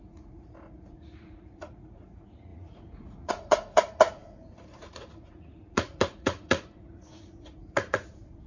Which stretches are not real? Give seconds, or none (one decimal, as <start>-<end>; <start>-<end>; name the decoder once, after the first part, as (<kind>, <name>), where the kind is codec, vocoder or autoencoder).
0.0-8.5 (vocoder, Vocos)